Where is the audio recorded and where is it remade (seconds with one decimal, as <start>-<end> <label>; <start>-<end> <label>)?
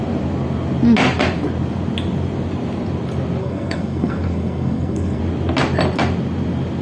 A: 0.0-3.4 recorded; 3.4-5.2 remade; 5.2-6.8 recorded